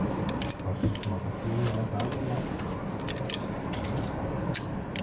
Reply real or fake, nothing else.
real